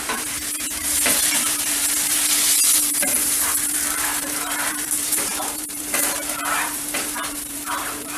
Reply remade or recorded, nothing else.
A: remade